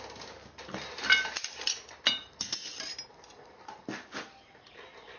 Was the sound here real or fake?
real